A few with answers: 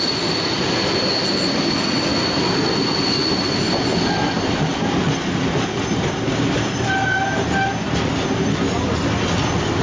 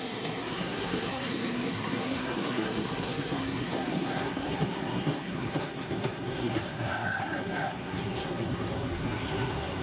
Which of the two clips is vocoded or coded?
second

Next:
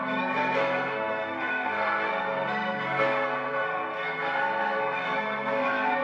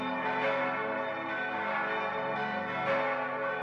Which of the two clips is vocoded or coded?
first